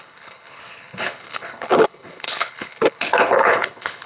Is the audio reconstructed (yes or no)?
yes